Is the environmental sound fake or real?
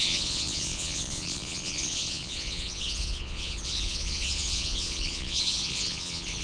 fake